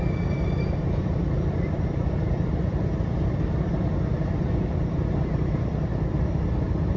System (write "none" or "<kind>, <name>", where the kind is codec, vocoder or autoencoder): vocoder, BigVGAN v2